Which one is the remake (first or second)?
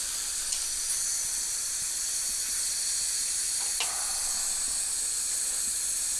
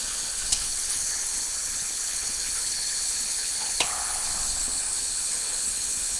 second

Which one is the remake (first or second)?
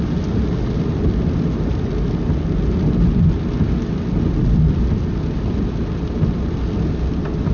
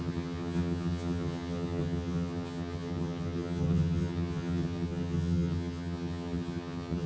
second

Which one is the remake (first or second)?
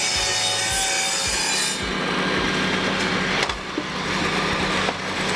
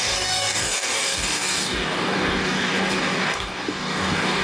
second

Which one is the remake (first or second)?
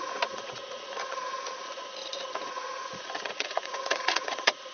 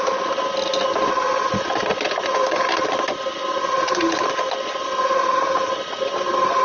first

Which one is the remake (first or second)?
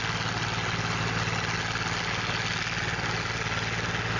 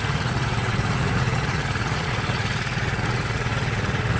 second